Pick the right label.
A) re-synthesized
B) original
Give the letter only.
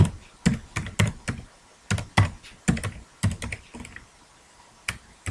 B